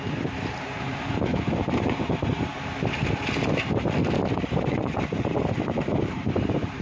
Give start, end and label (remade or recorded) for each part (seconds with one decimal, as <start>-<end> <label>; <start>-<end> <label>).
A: 0.0-1.3 remade; 1.3-1.8 recorded; 1.8-2.5 remade; 2.5-4.4 recorded; 4.4-6.8 remade